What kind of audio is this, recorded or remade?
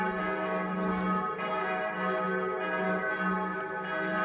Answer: recorded